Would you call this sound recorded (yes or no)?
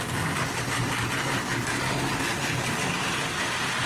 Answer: yes